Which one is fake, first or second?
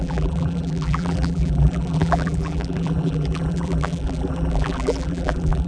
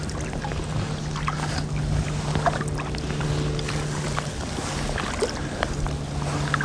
first